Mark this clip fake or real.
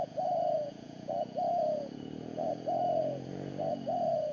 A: fake